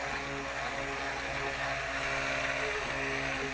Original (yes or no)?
yes